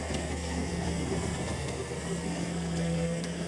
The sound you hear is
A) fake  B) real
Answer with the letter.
A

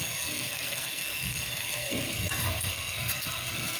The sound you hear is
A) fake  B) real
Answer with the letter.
A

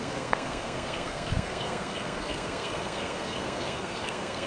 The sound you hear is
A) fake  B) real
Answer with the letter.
A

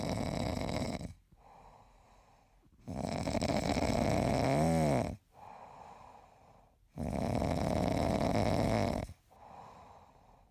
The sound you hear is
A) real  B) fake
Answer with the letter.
A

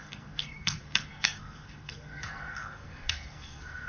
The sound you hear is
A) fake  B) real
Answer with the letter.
A